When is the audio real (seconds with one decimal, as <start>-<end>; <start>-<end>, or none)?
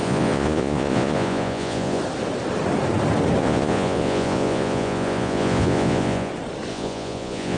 2.0-3.4; 6.3-6.7